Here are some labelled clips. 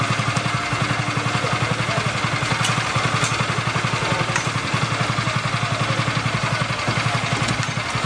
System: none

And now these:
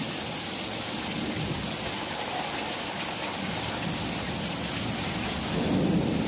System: none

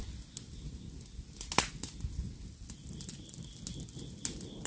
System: none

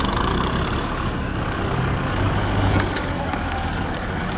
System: codec, DAC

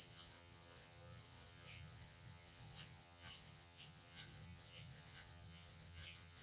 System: vocoder, WaveNeXt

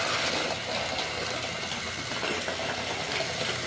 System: none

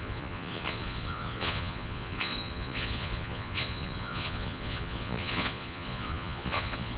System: vocoder, Vocos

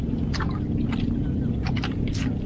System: none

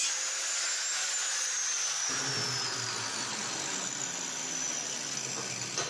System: none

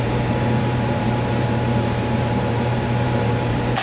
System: vocoder, BigVGAN v2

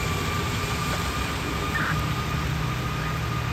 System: none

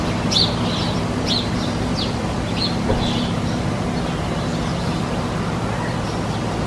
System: none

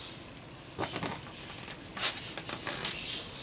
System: none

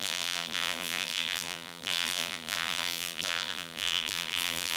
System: vocoder, BigVGAN v2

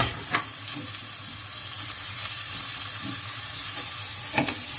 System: none